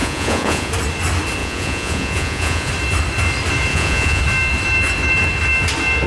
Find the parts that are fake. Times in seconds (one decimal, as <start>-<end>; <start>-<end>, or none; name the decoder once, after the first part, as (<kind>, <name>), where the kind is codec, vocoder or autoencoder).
0.0-0.7 (vocoder, Vocos); 1.4-2.7; 3.7-4.2